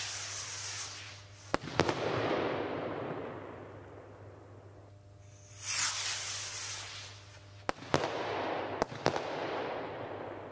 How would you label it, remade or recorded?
recorded